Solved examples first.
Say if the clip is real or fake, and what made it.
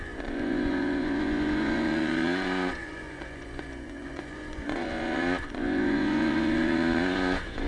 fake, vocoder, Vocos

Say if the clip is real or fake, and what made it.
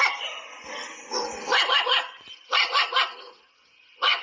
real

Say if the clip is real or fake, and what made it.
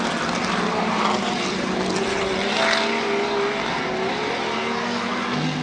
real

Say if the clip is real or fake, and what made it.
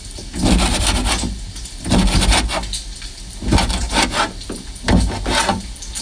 real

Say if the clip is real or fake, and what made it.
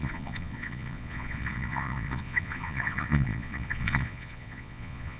fake, vocoder, Vocos